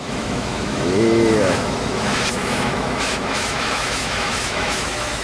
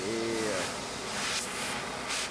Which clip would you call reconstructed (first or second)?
first